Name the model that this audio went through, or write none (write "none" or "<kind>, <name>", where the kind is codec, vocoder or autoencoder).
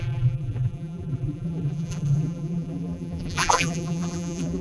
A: vocoder, BigVGAN v2